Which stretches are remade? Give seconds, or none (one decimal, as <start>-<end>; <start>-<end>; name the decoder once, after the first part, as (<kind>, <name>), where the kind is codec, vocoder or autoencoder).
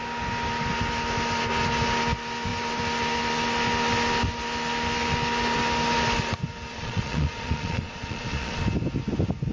6.7-8.6 (vocoder, Vocos)